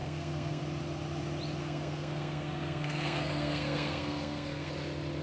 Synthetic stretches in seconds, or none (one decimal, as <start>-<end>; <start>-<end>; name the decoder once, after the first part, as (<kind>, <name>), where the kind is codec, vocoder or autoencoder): 0.0-0.6 (codec, SNAC); 1.6-4.7